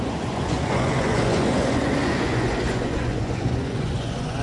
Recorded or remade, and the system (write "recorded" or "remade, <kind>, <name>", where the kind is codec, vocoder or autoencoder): remade, vocoder, Vocos